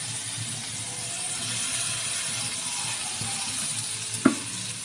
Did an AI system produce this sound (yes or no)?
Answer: no